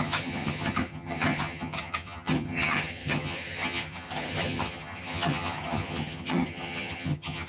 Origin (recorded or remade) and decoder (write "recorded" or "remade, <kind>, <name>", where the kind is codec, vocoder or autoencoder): remade, vocoder, HiFi-GAN